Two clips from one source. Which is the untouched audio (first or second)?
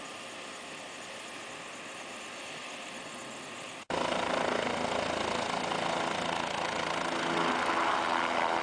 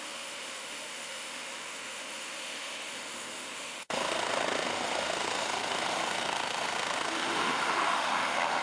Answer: first